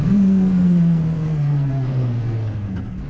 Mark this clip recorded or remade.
remade